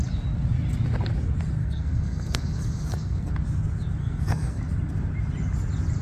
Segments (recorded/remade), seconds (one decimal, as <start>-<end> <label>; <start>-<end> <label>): 0.0-1.6 recorded; 1.6-3.3 remade; 3.3-4.0 recorded; 4.0-4.6 remade; 4.6-6.0 recorded

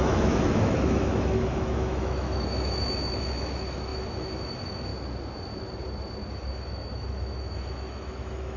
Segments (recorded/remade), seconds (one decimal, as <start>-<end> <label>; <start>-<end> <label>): 0.0-4.9 remade; 4.9-6.3 recorded; 6.3-8.6 remade

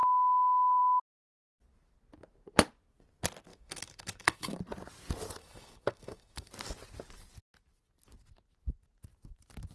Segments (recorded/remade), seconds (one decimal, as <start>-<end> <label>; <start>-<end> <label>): 0.0-0.8 remade; 0.8-3.5 recorded; 3.5-4.6 remade; 4.6-5.4 recorded; 5.4-6.5 remade; 6.5-9.7 recorded

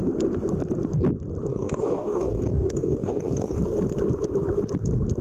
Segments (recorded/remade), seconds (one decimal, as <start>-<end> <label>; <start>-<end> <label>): 0.0-1.5 recorded; 1.5-3.6 remade; 3.6-5.2 recorded

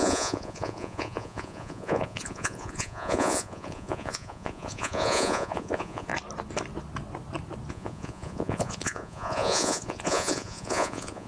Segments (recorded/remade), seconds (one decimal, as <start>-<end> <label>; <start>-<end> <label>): 0.0-6.1 remade; 6.1-7.7 recorded; 7.7-11.3 remade

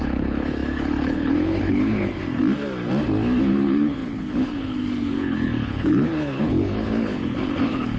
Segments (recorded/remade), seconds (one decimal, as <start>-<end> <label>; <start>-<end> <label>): 0.0-2.2 remade; 2.2-3.4 recorded; 3.4-8.0 remade

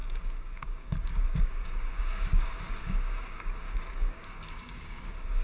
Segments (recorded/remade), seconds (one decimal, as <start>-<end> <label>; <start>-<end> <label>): 0.0-5.4 remade